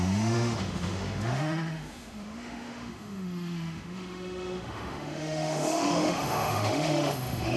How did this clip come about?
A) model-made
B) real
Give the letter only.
A